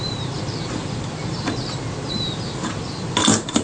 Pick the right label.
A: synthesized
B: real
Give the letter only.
A